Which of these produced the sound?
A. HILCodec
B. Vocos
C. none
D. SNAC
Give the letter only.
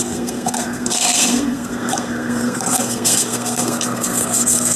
D